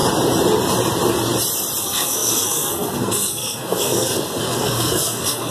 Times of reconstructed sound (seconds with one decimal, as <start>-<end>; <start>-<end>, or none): 1.8-5.5